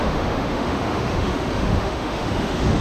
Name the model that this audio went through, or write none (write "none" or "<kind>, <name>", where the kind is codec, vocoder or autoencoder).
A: autoencoder, DAC-VAE